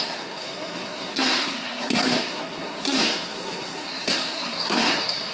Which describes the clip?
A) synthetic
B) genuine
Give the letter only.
A